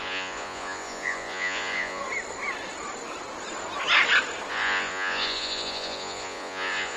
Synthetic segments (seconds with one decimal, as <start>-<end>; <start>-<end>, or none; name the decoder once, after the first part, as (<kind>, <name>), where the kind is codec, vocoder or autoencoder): 0.0-2.0 (vocoder, Vocos); 4.5-7.0